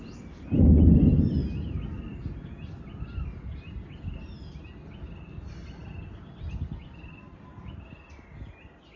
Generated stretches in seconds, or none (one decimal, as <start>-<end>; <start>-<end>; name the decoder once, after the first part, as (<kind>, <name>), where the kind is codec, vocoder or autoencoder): none